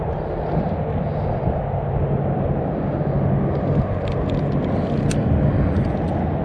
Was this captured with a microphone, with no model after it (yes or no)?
yes